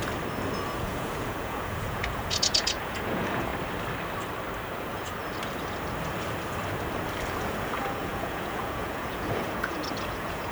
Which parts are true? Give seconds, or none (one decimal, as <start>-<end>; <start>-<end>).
0.0-0.8; 3.5-4.7; 5.2-7.4